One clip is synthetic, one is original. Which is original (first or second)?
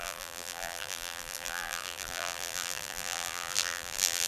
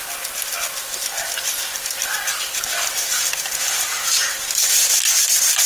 second